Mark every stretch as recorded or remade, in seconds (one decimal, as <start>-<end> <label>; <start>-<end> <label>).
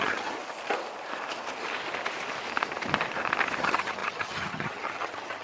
0.0-0.4 remade; 0.4-3.6 recorded; 3.6-5.4 remade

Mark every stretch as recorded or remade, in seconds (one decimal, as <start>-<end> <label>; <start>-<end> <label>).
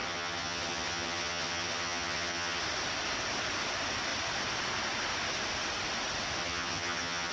0.0-2.6 remade; 2.6-6.4 recorded; 6.4-7.3 remade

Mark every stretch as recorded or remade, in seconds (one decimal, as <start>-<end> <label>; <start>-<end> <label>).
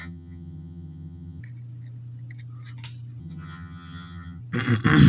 0.0-1.4 remade; 1.4-3.2 recorded; 3.2-4.4 remade; 4.4-5.1 recorded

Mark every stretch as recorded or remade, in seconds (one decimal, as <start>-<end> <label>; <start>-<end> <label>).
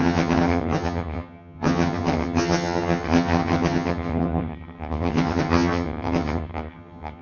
0.0-7.2 remade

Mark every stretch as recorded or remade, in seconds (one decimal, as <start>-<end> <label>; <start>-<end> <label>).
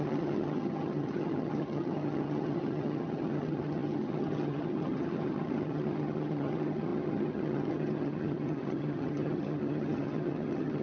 0.0-10.8 remade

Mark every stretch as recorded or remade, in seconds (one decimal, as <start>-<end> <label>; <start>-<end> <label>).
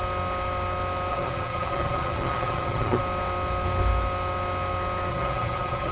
0.0-1.1 recorded; 1.1-3.0 remade; 3.0-5.1 recorded; 5.1-5.9 remade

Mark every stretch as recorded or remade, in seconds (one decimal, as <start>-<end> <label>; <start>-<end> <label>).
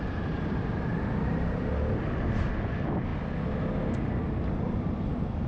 0.0-5.5 recorded